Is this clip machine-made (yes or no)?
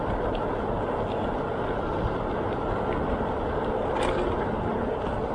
no